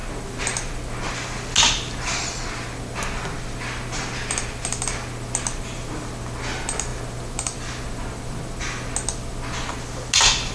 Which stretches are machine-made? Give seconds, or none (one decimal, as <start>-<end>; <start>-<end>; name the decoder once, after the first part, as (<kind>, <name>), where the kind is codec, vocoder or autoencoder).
none